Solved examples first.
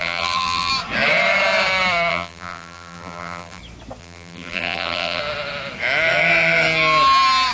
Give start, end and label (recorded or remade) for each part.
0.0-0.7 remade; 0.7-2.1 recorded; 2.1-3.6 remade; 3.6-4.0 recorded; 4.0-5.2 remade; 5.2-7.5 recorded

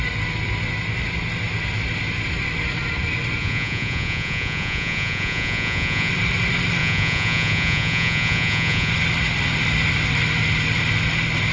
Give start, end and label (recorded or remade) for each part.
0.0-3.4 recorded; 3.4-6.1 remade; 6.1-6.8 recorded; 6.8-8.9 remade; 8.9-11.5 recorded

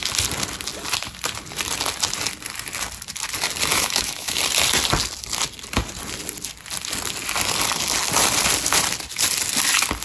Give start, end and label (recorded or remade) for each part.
0.0-3.7 recorded; 3.7-4.4 remade; 4.4-10.0 recorded

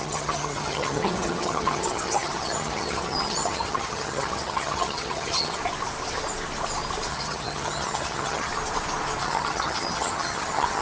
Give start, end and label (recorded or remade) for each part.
0.0-5.6 remade; 5.6-7.1 recorded; 7.1-8.5 remade; 8.5-9.2 recorded; 9.2-10.8 remade